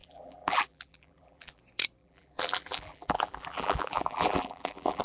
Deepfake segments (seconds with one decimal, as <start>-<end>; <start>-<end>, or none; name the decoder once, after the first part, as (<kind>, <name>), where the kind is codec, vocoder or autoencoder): 0.0-1.6 (vocoder, BigVGAN v2); 2.0-5.0